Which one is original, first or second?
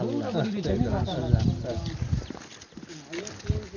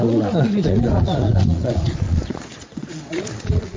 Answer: first